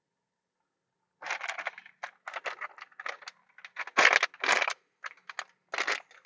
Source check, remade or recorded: recorded